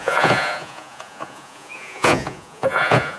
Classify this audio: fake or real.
fake